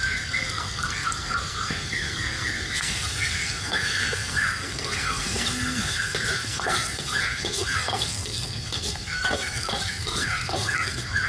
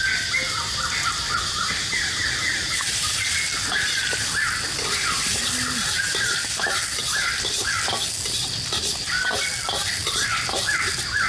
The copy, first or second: first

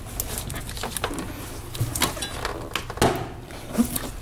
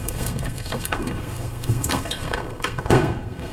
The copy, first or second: second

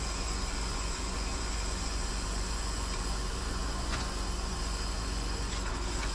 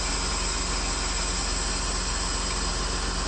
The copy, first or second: first